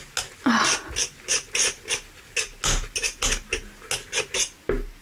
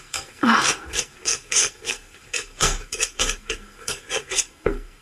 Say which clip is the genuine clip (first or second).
first